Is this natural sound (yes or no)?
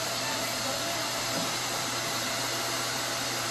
no